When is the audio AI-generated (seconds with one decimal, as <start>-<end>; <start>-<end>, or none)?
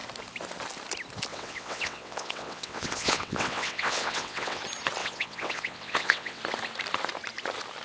1.3-4.6; 5.0-6.4